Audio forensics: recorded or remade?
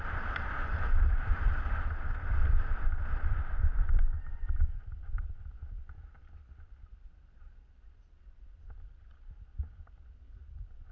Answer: remade